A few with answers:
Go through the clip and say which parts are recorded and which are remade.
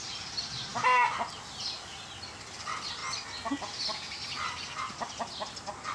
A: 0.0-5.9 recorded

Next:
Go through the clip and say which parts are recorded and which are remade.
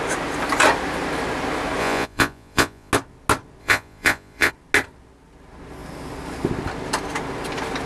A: 0.0-1.8 recorded; 1.8-2.9 remade; 2.9-3.6 recorded; 3.6-4.5 remade; 4.5-7.9 recorded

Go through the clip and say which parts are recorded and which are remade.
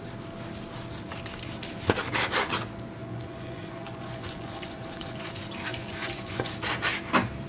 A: 0.0-3.0 recorded; 3.0-5.3 remade; 5.3-5.7 recorded; 5.7-6.5 remade; 6.5-7.5 recorded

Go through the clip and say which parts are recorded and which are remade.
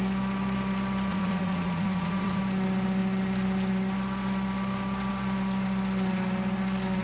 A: 0.0-1.1 recorded; 1.1-2.4 remade; 2.4-7.0 recorded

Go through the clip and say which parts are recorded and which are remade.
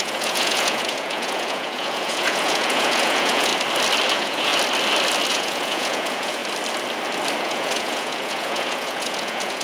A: 0.0-3.5 remade; 3.5-4.1 recorded; 4.1-4.5 remade; 4.5-5.3 recorded; 5.3-6.4 remade; 6.4-7.4 recorded; 7.4-9.6 remade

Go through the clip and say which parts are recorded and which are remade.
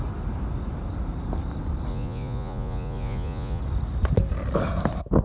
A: 0.0-1.9 recorded; 1.9-3.6 remade; 3.6-5.2 recorded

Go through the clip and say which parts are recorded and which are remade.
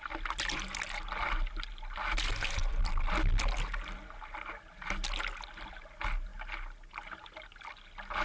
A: 0.0-8.2 recorded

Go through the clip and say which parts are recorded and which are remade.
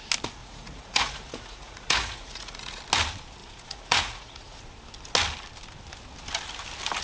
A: 0.0-0.4 recorded; 0.4-2.8 remade; 2.8-3.4 recorded; 3.4-4.6 remade; 4.6-7.0 recorded